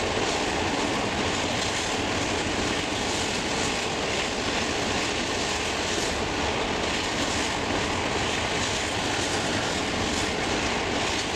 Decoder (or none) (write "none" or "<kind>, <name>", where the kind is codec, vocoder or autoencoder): none